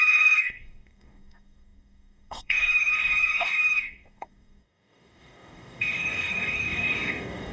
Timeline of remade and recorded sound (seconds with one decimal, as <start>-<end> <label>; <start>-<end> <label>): 0.0-7.5 remade